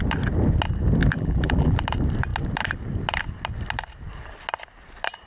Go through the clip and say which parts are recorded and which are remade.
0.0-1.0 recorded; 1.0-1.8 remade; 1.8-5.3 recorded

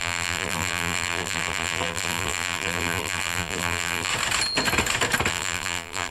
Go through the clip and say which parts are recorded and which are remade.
0.0-4.1 remade; 4.1-5.3 recorded; 5.3-6.1 remade

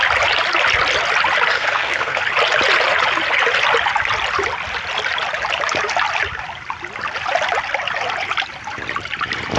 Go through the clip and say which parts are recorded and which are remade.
0.0-1.5 recorded; 1.5-2.2 remade; 2.2-9.6 recorded